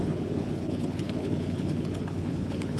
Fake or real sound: fake